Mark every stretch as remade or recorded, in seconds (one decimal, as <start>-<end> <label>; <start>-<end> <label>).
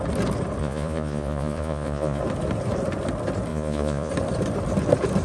0.0-0.6 recorded; 0.6-2.2 remade; 2.2-3.5 recorded; 3.5-4.1 remade; 4.1-5.2 recorded